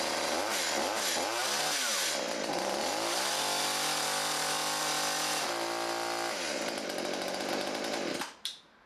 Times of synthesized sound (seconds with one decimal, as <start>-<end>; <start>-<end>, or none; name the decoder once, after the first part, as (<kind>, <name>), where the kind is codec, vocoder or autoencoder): none